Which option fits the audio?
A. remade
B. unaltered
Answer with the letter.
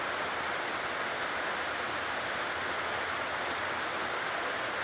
B